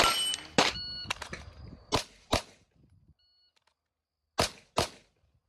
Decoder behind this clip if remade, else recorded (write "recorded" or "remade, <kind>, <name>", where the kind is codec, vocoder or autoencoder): recorded